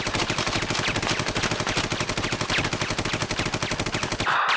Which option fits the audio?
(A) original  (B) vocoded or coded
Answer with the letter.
A